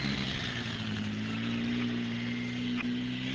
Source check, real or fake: real